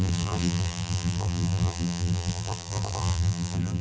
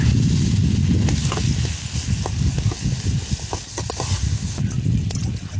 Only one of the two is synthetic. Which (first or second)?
first